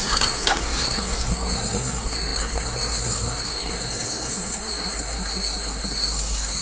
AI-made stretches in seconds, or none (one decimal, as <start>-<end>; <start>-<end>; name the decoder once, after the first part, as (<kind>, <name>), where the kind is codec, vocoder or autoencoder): 0.0-6.6 (codec, SNAC)